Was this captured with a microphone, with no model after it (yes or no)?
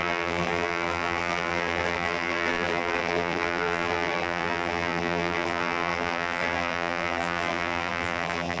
no